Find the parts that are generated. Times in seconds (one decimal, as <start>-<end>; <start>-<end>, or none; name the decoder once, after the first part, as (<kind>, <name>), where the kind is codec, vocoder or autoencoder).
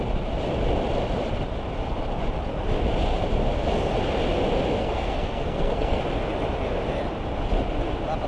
4.8-6.0 (codec, SNAC)